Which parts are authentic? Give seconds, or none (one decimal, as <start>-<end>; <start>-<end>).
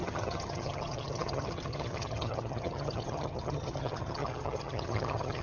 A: none